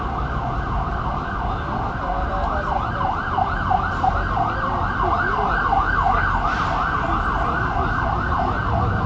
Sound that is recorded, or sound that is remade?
recorded